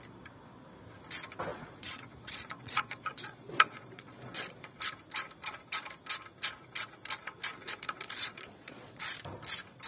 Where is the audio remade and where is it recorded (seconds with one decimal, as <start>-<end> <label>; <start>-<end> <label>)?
0.0-1.5 recorded; 1.5-4.8 remade; 4.8-7.5 recorded; 7.5-9.1 remade; 9.1-9.9 recorded